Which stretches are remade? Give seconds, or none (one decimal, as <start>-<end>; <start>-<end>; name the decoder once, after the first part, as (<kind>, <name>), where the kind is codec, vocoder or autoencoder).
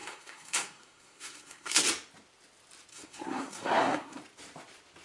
0.0-1.8 (codec, SNAC); 2.9-4.2